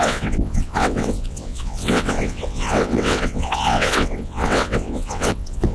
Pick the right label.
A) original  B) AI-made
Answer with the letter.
B